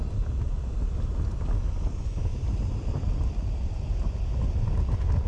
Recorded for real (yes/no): yes